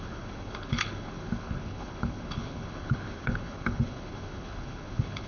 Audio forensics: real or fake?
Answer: fake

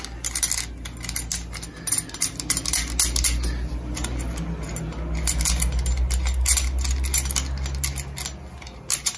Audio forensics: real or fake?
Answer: real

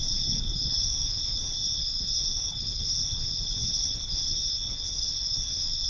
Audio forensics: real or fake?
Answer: fake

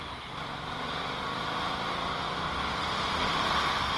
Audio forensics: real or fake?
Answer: real